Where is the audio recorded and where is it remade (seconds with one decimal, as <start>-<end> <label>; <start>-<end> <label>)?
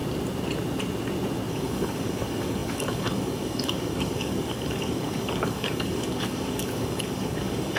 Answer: 0.0-1.5 recorded; 1.5-7.8 remade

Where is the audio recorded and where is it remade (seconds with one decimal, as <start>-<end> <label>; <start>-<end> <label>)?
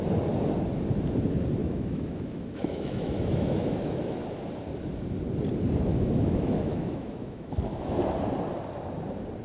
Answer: 0.0-1.6 recorded; 1.6-4.2 remade; 4.2-5.9 recorded; 5.9-8.0 remade; 8.0-9.4 recorded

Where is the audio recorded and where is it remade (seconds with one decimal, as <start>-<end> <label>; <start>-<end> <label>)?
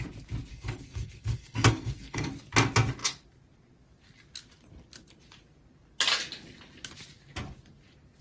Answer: 0.0-0.5 recorded; 0.5-2.3 remade; 2.3-8.2 recorded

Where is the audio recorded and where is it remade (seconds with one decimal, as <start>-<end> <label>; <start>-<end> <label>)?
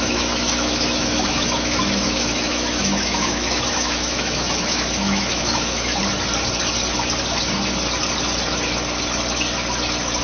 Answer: 0.0-5.9 remade; 5.9-10.2 recorded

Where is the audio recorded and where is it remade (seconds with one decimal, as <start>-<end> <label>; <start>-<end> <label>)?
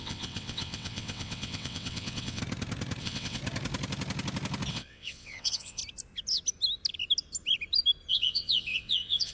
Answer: 0.0-2.4 remade; 2.4-3.0 recorded; 3.0-3.4 remade; 3.4-4.7 recorded; 4.7-5.8 remade; 5.8-8.1 recorded; 8.1-9.3 remade